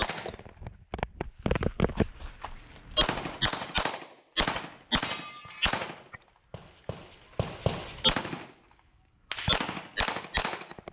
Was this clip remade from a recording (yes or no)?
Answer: no